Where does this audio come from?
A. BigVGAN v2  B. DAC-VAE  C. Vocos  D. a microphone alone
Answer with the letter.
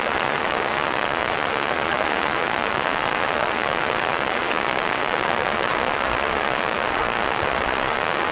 C